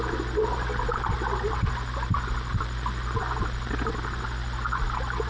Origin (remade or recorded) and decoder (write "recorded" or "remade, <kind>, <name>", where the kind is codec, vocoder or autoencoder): recorded